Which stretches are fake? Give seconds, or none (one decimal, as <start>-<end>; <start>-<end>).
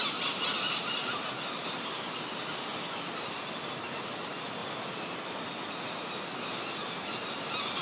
none